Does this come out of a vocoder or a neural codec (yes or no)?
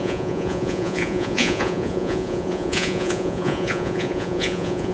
yes